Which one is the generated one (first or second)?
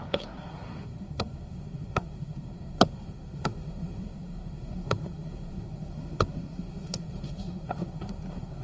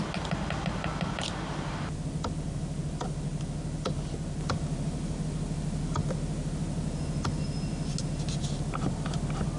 first